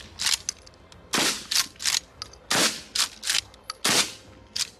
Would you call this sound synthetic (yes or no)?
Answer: no